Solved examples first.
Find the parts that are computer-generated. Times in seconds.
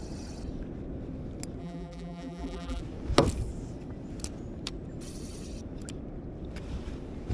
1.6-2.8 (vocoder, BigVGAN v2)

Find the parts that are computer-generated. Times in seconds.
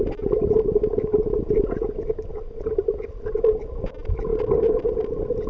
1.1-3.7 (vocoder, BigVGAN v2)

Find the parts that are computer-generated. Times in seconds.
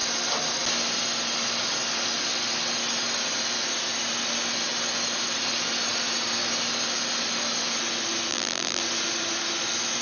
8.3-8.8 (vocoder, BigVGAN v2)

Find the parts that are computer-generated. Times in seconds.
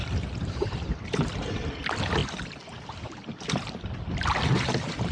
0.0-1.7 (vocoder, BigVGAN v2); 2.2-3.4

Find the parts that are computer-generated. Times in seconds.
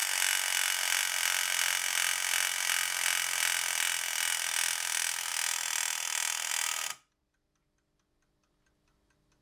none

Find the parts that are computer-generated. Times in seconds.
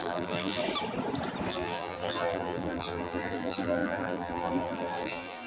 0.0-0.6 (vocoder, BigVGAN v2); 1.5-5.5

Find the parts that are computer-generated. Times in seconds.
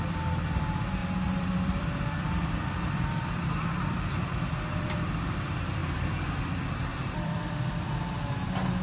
1.0-5.0 (vocoder, BigVGAN v2); 6.9-8.2